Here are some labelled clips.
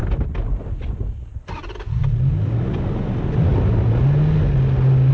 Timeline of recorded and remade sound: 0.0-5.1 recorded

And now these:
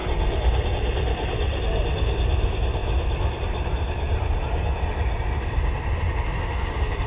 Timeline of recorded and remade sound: 0.0-7.1 recorded

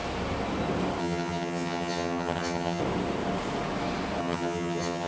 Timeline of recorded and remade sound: 0.0-1.0 recorded; 1.0-2.8 remade; 2.8-4.2 recorded; 4.2-5.1 remade

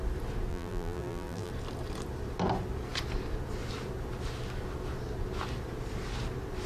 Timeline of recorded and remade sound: 0.0-0.5 recorded; 0.5-1.5 remade; 1.5-6.7 recorded

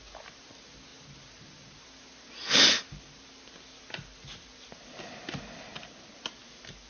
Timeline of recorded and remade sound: 0.0-6.9 recorded